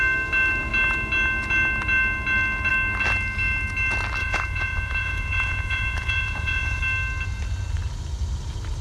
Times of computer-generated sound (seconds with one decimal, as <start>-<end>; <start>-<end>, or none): 4.2-6.8